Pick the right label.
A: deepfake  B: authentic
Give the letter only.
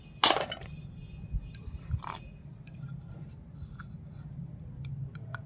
B